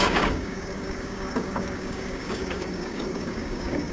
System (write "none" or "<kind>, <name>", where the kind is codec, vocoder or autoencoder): codec, DAC